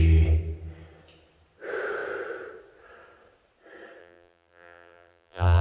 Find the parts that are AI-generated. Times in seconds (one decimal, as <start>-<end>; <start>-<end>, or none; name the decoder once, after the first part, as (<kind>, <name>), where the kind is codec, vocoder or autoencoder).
4.0-5.6 (vocoder, BigVGAN v2)